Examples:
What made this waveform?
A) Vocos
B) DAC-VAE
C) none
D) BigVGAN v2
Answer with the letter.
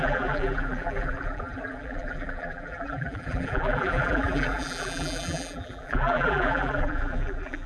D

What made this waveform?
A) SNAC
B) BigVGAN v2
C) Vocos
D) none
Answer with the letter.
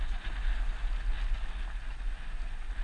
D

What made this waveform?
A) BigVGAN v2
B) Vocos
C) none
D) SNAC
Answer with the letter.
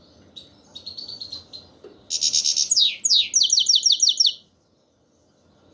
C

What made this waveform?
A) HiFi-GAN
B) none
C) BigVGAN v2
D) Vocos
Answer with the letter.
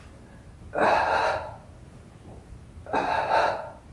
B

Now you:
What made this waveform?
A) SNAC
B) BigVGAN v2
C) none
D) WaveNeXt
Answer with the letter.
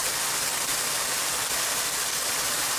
C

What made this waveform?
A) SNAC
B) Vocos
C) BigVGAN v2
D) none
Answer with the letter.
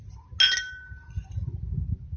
D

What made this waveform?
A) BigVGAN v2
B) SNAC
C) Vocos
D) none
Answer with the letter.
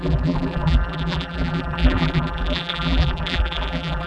A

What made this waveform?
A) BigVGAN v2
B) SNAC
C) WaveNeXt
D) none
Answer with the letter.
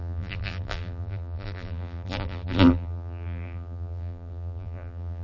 A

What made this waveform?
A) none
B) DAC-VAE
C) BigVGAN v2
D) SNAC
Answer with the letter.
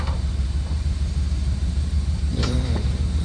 C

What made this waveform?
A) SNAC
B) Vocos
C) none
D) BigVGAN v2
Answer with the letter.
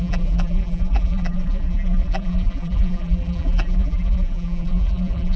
D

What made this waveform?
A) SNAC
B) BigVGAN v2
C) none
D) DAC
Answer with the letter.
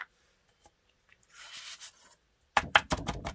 C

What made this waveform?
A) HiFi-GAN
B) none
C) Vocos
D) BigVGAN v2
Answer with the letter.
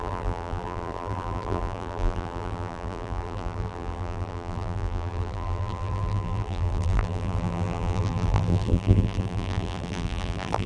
D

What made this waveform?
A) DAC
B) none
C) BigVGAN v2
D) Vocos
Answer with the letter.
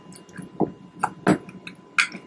B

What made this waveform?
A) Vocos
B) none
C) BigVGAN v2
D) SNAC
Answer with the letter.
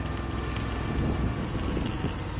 B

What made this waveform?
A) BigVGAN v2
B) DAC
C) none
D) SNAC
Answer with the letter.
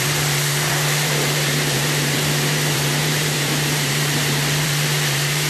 A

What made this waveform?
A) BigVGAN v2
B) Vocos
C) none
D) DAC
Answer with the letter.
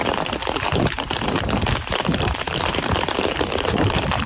A